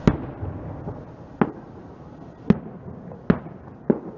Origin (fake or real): real